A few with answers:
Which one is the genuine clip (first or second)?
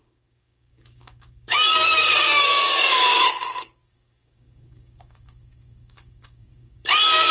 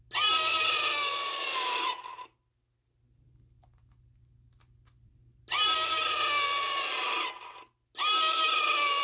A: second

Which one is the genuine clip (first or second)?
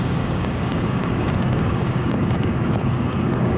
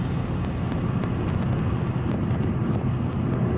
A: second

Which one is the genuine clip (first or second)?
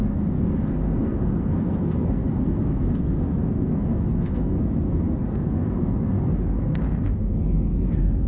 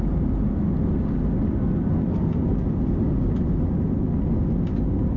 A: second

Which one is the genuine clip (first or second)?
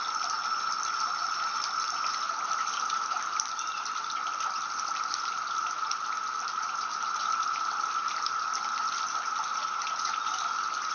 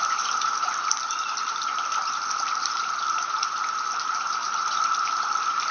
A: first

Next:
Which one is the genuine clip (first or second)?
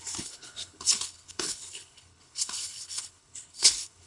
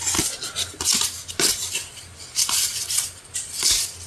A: second